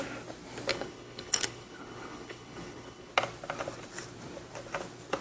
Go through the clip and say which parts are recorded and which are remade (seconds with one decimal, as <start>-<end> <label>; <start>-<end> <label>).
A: 0.0-0.7 recorded; 0.7-3.1 remade; 3.1-5.2 recorded